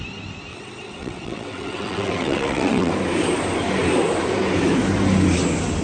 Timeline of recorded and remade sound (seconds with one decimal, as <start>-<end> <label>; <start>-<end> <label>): 0.0-0.5 recorded; 0.5-2.9 remade; 2.9-5.8 recorded